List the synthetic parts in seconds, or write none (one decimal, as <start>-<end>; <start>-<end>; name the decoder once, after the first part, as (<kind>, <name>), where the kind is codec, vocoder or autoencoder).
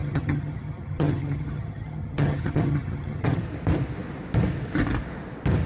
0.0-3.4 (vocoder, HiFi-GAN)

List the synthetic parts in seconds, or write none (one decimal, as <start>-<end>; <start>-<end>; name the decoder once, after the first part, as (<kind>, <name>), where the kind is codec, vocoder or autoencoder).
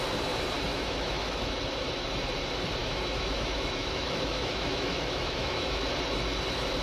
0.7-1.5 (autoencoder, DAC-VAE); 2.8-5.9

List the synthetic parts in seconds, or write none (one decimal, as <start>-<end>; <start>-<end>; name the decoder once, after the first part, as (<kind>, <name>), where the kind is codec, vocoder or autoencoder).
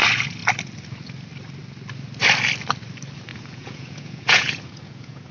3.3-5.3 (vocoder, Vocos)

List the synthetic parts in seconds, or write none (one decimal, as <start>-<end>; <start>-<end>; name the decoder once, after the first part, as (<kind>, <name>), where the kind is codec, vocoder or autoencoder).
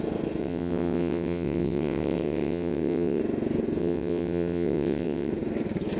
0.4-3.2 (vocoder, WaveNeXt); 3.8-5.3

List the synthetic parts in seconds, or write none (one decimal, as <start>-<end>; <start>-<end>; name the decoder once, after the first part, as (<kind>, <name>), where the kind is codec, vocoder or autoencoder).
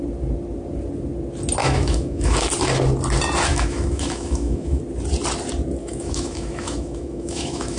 1.6-2.5 (autoencoder, DAC-VAE); 3.5-4.8; 5.8-7.8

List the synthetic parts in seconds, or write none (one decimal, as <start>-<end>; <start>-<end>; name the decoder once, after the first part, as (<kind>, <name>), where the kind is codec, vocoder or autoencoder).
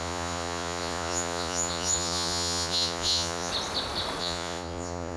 0.0-3.5 (vocoder, Vocos); 4.2-5.2